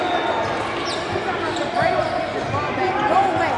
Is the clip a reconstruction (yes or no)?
no